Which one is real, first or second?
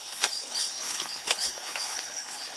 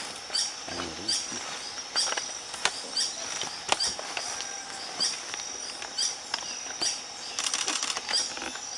second